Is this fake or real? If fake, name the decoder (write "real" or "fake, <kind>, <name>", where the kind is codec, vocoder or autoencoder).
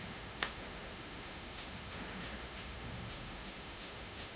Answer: fake, autoencoder, DAC-VAE